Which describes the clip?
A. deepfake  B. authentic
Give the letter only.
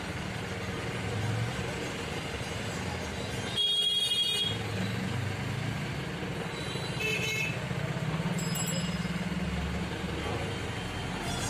B